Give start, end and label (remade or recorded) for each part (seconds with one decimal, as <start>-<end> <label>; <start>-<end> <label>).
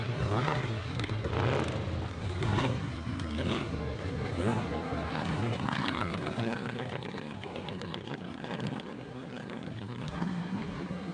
0.0-1.3 remade; 1.3-2.1 recorded; 2.1-11.1 remade